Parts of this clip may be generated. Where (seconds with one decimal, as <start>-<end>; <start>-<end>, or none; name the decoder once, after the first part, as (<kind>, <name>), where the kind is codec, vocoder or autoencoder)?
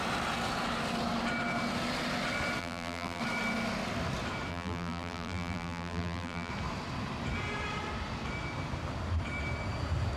2.6-3.2 (vocoder, BigVGAN v2); 4.5-6.5